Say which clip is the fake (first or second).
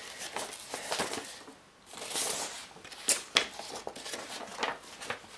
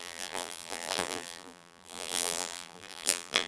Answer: second